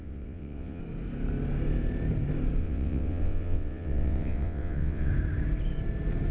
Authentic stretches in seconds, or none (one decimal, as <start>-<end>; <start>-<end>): 0.8-2.6; 5.1-6.3